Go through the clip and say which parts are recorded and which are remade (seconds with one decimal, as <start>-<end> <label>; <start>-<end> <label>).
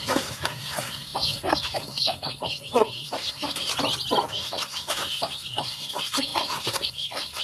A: 0.0-3.7 remade; 3.7-4.3 recorded; 4.3-7.4 remade